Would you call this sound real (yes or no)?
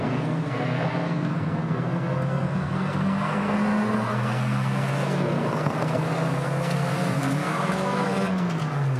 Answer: no